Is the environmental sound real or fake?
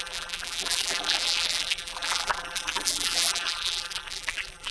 fake